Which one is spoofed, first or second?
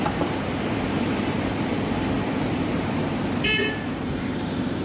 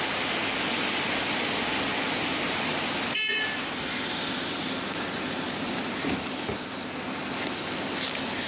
first